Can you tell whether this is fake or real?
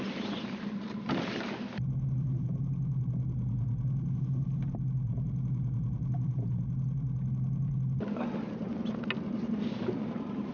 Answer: real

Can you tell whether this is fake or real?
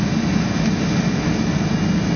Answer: real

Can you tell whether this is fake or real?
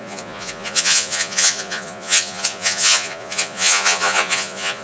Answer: fake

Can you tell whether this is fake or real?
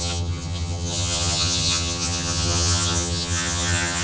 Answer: fake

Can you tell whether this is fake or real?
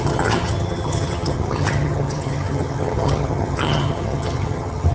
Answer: fake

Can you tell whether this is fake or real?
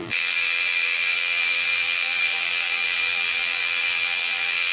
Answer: fake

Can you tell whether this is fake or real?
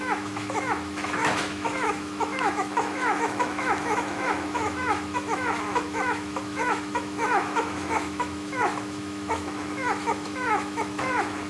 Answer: fake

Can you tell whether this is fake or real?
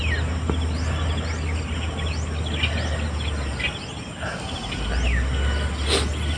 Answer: real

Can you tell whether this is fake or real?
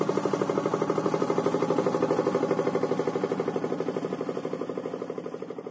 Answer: real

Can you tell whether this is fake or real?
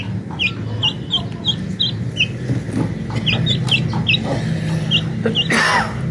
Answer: real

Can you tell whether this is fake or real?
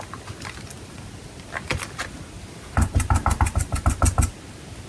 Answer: real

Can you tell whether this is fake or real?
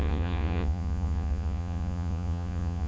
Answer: fake